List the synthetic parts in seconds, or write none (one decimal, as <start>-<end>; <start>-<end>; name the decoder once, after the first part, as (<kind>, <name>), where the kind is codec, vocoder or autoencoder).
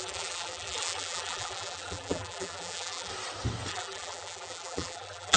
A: 0.0-3.1 (vocoder, BigVGAN v2); 3.7-5.4